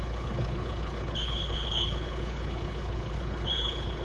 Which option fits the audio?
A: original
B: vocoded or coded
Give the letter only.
B